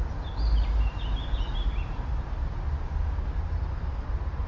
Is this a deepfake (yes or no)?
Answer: no